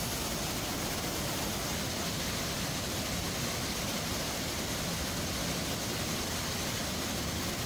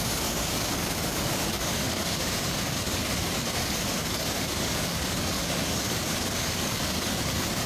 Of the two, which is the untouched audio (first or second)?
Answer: first